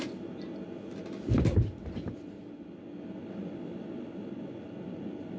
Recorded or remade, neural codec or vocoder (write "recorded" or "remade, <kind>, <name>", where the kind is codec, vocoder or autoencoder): recorded